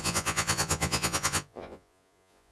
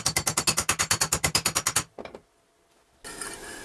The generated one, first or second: first